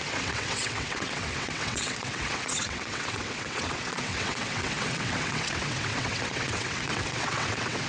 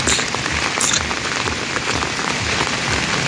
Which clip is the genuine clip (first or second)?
second